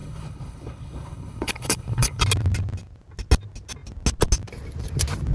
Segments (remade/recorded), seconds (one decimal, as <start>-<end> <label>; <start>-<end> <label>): 0.0-2.2 remade; 2.2-5.3 recorded